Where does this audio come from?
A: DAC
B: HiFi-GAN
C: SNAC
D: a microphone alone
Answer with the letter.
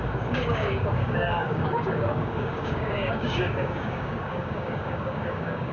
A